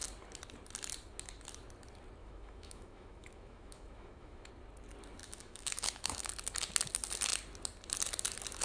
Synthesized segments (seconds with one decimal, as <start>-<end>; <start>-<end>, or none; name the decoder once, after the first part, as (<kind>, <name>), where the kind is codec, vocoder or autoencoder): 2.2-4.5 (autoencoder, DAC-VAE); 5.2-6.3